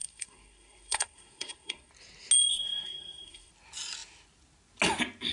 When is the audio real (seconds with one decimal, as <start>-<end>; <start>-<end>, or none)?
1.9-2.5; 3.5-5.3